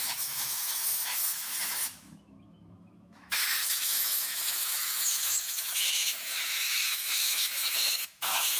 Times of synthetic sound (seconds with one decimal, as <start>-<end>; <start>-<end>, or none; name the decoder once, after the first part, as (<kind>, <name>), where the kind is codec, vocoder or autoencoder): 0.0-8.6 (autoencoder, DAC-VAE)